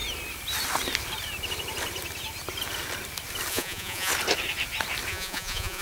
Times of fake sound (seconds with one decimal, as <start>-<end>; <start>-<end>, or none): 3.5-4.1; 5.1-5.8